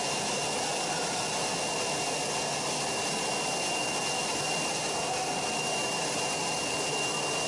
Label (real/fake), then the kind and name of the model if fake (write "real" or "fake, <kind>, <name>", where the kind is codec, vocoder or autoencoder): real